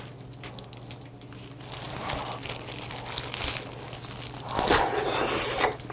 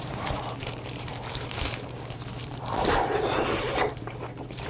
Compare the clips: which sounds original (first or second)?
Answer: first